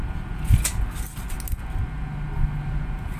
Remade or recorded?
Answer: recorded